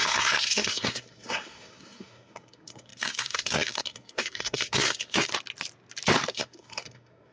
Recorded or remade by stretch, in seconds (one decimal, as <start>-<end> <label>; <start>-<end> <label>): 0.0-5.3 remade; 5.3-6.3 recorded; 6.3-7.3 remade